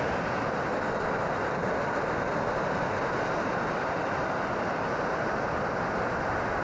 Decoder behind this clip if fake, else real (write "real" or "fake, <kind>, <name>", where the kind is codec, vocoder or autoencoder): real